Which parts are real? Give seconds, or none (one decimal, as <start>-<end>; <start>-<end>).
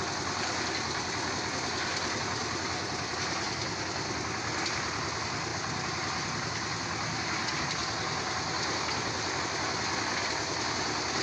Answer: 0.0-11.2